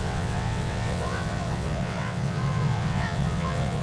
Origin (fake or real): fake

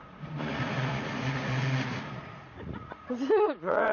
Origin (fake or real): fake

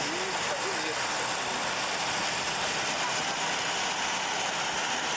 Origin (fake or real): real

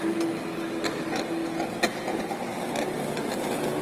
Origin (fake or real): real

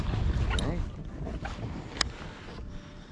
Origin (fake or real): real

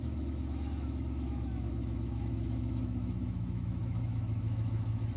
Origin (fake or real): fake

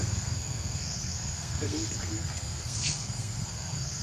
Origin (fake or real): fake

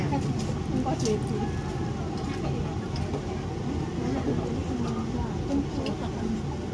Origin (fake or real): real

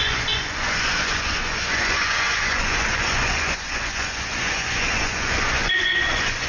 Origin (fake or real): fake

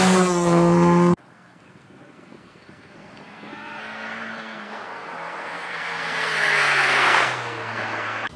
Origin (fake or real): fake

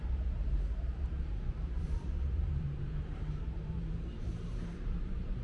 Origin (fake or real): fake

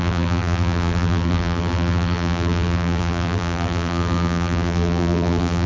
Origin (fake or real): fake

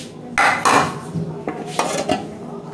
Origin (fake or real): real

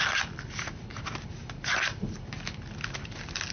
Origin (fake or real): real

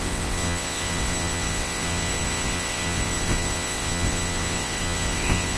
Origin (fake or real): fake